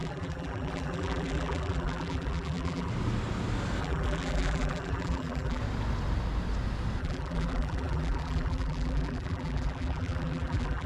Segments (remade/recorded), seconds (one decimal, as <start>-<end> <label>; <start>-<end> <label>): 0.0-2.9 remade; 2.9-3.8 recorded; 3.8-5.6 remade; 5.6-7.0 recorded; 7.0-10.9 remade